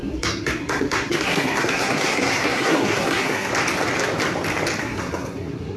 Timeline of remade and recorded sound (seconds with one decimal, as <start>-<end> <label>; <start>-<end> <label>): 0.0-3.5 remade; 3.5-4.8 recorded; 4.8-5.8 remade

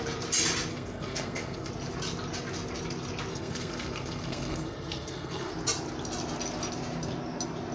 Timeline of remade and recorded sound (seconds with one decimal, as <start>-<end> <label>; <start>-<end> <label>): 0.0-0.7 recorded; 0.7-1.7 remade; 1.7-3.3 recorded; 3.3-5.5 remade; 5.5-7.7 recorded

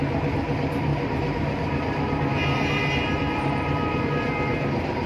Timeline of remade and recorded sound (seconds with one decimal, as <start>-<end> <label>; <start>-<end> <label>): 0.0-5.1 remade

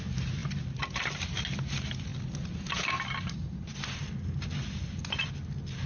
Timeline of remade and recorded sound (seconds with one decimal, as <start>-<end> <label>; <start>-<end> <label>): 0.0-5.9 recorded

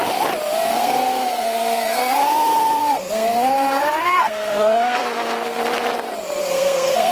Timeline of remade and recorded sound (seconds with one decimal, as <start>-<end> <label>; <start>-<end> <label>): 0.0-0.7 recorded; 0.7-2.2 remade; 2.2-2.8 recorded; 2.8-5.6 remade; 5.6-6.4 recorded; 6.4-7.1 remade

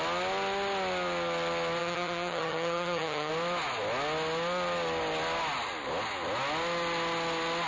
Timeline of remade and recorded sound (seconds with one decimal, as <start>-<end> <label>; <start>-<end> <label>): 0.0-1.8 recorded; 1.8-3.3 remade; 3.3-7.7 recorded

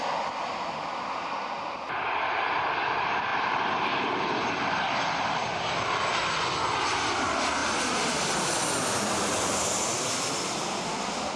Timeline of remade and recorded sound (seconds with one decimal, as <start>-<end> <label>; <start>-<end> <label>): 0.0-3.3 recorded; 3.3-6.0 remade; 6.0-7.6 recorded; 7.6-11.4 remade

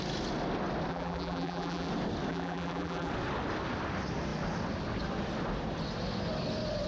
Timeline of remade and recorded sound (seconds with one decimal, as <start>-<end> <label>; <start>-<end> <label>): 0.0-0.9 recorded; 0.9-1.9 remade; 1.9-2.3 recorded; 2.3-3.1 remade; 3.1-6.9 recorded